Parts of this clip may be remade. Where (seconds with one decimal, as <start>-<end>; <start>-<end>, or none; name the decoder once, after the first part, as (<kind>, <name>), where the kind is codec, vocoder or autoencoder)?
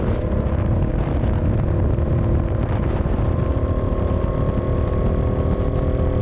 none